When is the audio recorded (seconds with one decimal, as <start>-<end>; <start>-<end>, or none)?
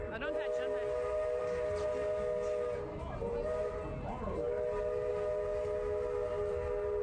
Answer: 0.0-7.0